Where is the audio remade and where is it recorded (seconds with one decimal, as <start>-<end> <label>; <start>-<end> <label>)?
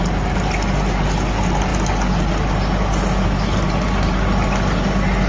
0.0-5.3 recorded